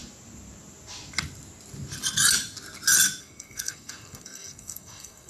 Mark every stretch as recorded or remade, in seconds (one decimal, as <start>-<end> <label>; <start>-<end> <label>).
0.0-3.2 recorded; 3.2-5.3 remade